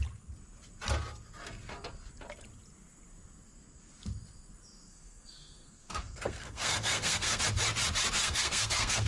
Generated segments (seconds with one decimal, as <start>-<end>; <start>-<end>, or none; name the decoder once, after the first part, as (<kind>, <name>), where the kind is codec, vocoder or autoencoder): 4.9-7.4 (codec, SNAC); 8.2-9.1